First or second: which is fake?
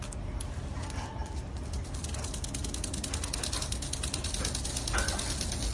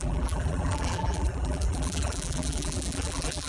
second